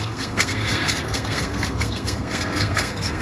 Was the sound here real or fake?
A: fake